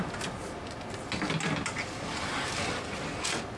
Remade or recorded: recorded